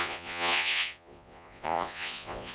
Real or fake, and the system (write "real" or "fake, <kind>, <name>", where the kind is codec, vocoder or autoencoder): fake, vocoder, Vocos